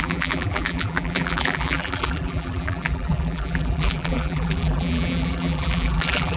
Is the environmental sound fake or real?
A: fake